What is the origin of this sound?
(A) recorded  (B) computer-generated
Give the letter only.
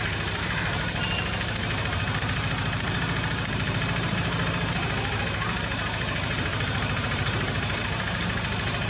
B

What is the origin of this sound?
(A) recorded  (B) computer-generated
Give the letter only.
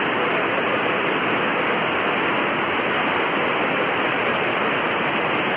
A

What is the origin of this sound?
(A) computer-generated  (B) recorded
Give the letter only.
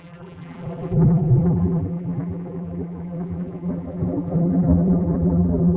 A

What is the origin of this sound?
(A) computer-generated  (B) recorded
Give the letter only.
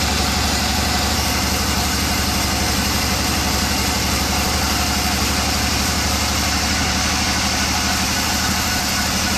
A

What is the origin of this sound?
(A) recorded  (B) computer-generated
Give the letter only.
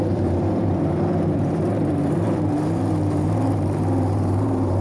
B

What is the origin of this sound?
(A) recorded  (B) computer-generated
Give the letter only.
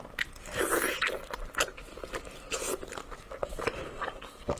A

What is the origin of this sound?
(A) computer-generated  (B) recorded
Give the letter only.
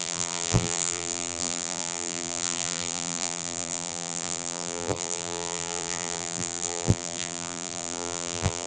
A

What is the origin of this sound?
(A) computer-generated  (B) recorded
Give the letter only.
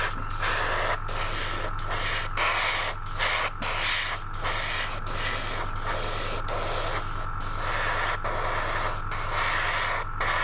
B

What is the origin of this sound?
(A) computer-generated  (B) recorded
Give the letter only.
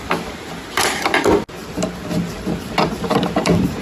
A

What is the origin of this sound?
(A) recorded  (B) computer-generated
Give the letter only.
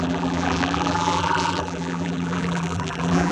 B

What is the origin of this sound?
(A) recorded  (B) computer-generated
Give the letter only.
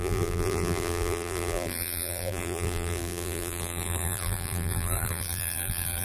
B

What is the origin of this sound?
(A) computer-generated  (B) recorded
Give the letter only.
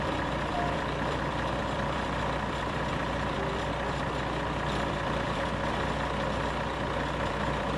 A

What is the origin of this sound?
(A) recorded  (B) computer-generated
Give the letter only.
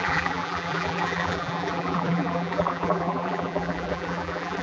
B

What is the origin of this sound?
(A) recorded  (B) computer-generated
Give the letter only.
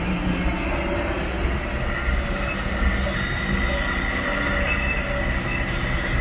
A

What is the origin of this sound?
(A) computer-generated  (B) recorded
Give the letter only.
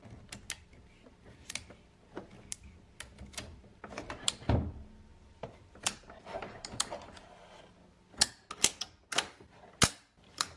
B